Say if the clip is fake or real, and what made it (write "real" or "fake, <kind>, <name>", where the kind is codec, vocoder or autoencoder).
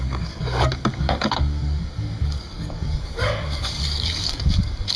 fake, codec, DAC